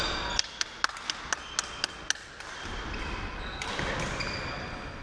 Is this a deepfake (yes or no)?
no